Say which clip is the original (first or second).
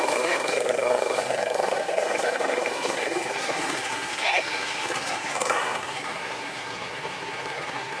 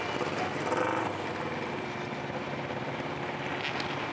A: second